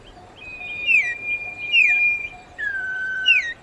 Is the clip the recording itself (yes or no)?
no